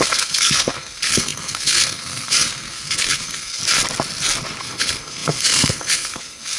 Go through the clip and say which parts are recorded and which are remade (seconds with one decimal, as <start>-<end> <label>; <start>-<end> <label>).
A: 0.0-3.6 remade; 3.6-4.6 recorded; 4.6-6.6 remade